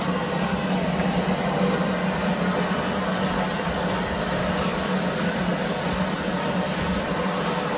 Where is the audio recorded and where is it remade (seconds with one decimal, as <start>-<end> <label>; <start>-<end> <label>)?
0.0-4.4 recorded; 4.4-5.4 remade; 5.4-7.8 recorded